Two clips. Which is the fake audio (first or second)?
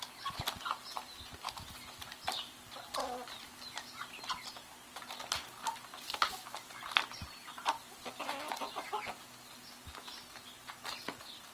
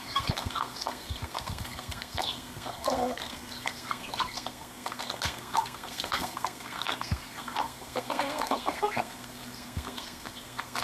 second